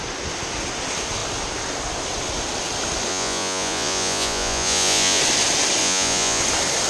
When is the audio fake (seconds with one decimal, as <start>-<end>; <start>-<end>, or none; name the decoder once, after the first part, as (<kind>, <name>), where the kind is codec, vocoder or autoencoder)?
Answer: 3.1-5.2 (vocoder, Vocos); 5.8-6.4